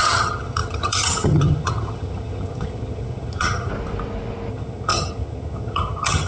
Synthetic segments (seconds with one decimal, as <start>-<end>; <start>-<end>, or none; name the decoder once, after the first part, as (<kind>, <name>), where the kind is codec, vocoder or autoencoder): 0.0-3.7 (vocoder, HiFi-GAN); 4.5-6.3

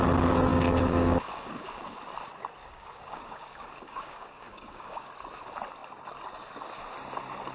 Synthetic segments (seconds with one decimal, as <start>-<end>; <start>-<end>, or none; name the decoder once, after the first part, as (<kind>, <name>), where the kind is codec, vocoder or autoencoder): 0.5-2.0 (codec, DAC); 2.6-5.1

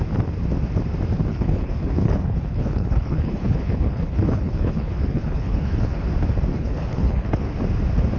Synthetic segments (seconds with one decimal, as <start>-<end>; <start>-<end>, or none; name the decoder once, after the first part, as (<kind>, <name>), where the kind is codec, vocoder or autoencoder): 1.3-6.1 (codec, HILCodec); 6.5-7.5

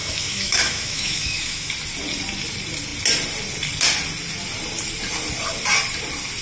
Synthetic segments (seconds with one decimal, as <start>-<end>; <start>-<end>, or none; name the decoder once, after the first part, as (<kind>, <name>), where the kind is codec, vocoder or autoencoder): 0.0-1.7 (autoencoder, DAC-VAE)

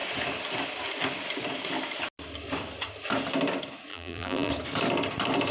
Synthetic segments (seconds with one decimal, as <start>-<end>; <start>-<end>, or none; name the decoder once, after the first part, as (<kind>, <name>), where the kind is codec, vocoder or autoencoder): 3.9-4.5 (vocoder, BigVGAN v2)

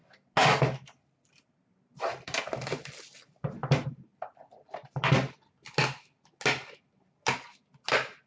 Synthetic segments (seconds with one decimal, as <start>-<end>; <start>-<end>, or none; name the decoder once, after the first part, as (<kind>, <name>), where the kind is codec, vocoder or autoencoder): none

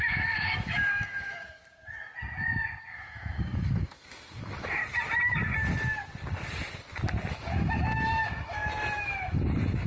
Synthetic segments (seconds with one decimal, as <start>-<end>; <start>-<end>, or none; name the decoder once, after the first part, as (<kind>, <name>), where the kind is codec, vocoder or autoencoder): 0.0-1.6 (autoencoder, DAC-VAE); 2.8-4.8; 7.3-9.9